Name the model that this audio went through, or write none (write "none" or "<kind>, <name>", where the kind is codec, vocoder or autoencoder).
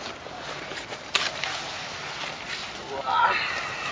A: none